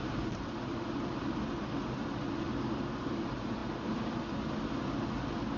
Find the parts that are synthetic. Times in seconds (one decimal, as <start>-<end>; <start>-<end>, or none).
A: none